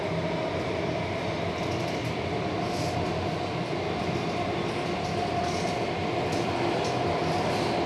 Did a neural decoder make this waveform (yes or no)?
no